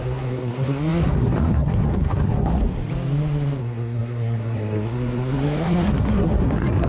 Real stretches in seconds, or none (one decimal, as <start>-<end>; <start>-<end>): 2.8-3.6